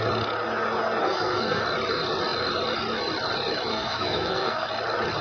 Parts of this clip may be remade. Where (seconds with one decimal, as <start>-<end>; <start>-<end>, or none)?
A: 1.0-1.6; 3.7-4.7